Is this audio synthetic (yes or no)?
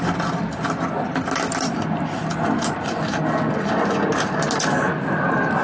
no